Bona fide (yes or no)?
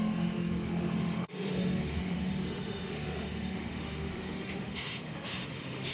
no